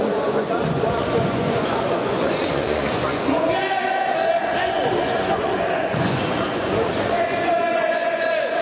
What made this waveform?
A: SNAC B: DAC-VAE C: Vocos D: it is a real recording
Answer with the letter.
C